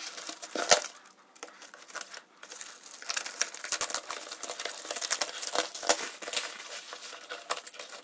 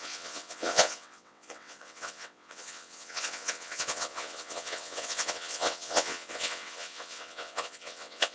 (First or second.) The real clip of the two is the first